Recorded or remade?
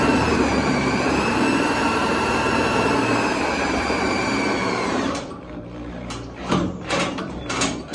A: remade